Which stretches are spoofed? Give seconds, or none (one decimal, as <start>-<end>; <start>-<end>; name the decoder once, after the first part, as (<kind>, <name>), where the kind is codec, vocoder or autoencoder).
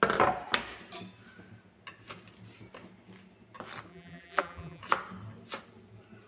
3.9-4.8 (vocoder, BigVGAN v2)